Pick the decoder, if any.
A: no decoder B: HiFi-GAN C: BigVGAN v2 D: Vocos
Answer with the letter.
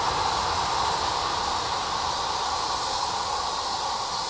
A